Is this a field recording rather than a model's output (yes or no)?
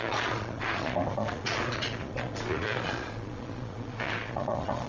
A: no